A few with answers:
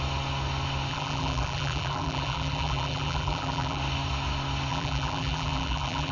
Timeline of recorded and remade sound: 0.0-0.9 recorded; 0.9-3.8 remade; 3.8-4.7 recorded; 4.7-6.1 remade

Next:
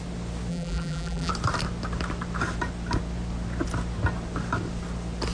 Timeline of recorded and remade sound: 0.0-0.5 recorded; 0.5-1.3 remade; 1.3-5.3 recorded

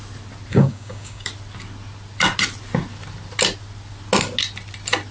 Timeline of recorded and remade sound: 0.0-0.5 recorded; 0.5-1.3 remade; 1.3-5.1 recorded

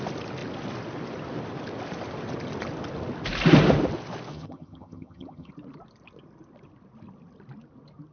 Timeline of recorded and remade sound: 0.0-4.3 recorded; 4.3-5.5 remade; 5.5-8.1 recorded

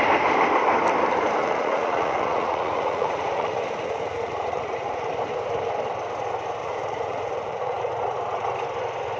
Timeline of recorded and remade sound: 0.0-1.4 recorded; 1.4-5.1 remade; 5.1-6.6 recorded; 6.6-7.9 remade; 7.9-9.2 recorded

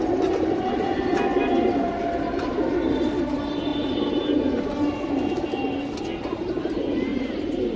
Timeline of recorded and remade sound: 0.0-7.1 recorded; 7.1-7.8 remade

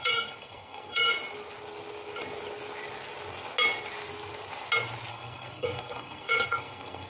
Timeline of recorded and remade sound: 0.0-1.1 remade; 1.1-5.1 recorded; 5.1-7.1 remade

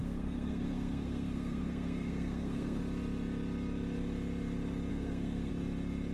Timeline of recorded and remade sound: 0.0-2.8 remade; 2.8-4.9 recorded; 4.9-5.5 remade; 5.5-6.1 recorded